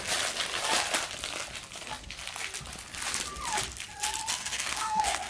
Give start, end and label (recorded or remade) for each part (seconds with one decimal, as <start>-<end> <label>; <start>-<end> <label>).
0.0-4.4 recorded; 4.4-5.3 remade